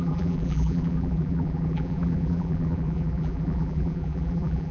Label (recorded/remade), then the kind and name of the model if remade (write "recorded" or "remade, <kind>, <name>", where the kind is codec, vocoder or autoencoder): remade, vocoder, BigVGAN v2